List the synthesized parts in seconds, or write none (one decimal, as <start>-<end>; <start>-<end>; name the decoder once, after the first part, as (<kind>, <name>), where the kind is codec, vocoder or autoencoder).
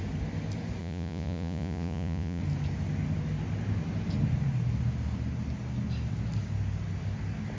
0.8-2.4 (vocoder, Vocos)